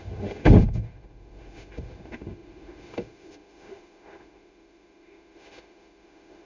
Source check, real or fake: fake